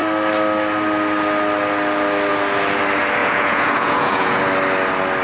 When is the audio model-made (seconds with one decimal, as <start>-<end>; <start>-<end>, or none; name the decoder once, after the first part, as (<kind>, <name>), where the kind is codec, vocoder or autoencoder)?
3.2-4.4 (vocoder, Vocos)